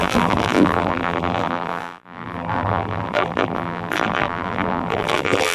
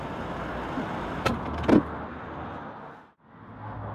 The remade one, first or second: first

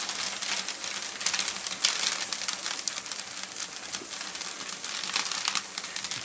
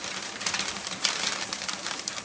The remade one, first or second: second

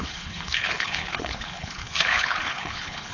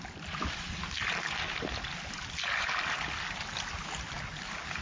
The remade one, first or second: first